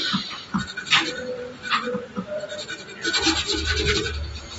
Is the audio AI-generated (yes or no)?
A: no